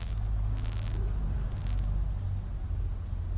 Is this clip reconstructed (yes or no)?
no